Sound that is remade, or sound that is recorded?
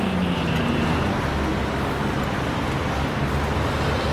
recorded